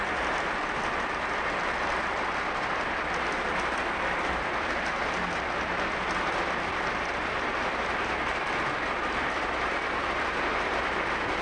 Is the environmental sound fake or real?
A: fake